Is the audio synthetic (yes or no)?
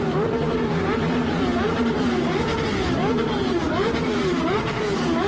yes